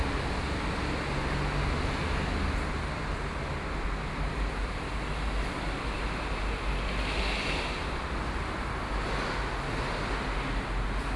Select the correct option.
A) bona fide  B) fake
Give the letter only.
A